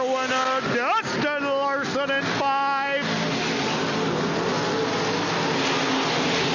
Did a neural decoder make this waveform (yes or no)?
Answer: no